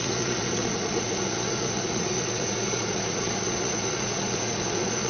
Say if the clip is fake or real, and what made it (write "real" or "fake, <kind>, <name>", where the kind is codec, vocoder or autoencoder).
fake, vocoder, Vocos